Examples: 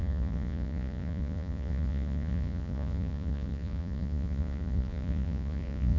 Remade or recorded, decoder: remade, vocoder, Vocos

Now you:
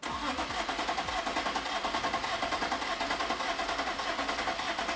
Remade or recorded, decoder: recorded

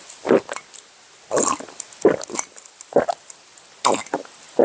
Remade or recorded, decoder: recorded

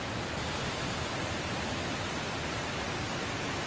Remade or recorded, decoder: recorded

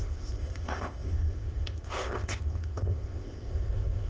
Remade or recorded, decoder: remade, codec, ZipCodec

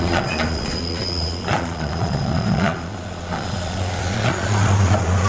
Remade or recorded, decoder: remade, vocoder, Vocos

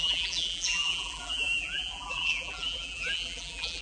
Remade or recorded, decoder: remade, vocoder, BigVGAN v2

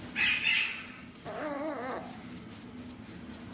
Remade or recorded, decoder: recorded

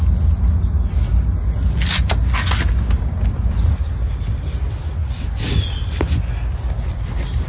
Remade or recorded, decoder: recorded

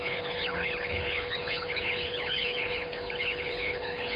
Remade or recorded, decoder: remade, codec, HILCodec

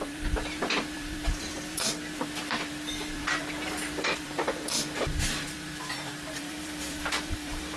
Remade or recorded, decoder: remade, vocoder, BigVGAN v2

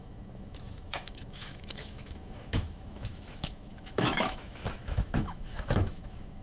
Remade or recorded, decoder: remade, autoencoder, DAC-VAE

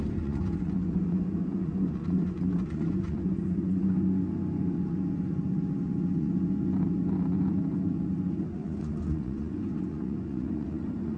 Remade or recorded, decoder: remade, vocoder, Vocos